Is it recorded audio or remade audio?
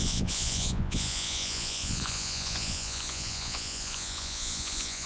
remade